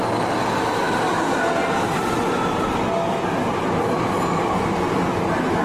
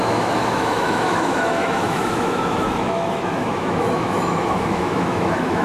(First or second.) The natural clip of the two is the first